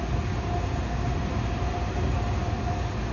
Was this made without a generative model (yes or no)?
yes